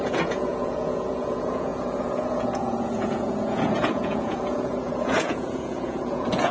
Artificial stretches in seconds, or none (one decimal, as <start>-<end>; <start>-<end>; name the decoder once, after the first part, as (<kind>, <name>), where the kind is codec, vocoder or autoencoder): 0.0-6.5 (vocoder, Vocos)